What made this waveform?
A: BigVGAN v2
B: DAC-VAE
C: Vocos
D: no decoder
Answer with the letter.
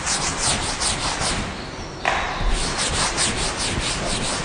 D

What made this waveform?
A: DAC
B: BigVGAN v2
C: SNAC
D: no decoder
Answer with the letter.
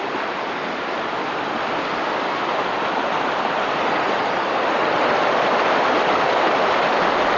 D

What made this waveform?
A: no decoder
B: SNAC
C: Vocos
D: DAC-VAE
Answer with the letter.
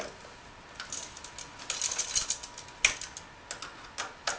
A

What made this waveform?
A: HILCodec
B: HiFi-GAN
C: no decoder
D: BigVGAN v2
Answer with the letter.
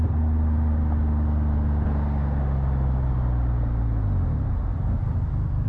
C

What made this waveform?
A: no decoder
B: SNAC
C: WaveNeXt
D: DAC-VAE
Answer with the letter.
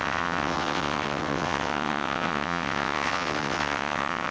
C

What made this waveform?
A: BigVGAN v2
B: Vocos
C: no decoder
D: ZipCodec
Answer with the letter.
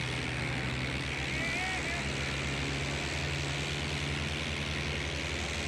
C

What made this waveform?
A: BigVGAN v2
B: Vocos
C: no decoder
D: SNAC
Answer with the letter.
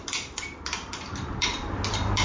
A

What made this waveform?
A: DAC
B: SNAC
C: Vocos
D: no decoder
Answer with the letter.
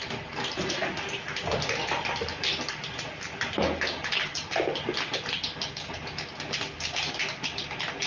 D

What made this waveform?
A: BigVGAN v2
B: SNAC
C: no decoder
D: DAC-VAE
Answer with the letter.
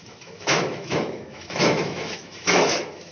D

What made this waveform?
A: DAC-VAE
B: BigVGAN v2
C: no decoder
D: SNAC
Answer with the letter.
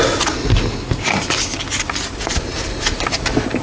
C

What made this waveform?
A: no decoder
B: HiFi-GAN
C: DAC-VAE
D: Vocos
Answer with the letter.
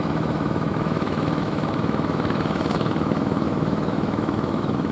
C